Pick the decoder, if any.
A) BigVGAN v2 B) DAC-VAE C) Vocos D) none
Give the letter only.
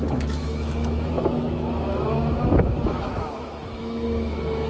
B